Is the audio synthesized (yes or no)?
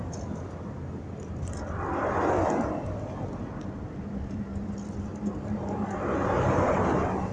no